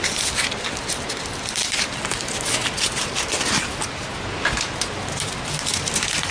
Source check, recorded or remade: recorded